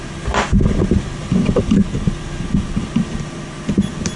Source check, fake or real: real